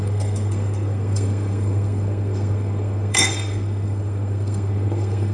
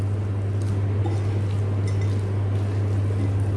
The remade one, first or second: first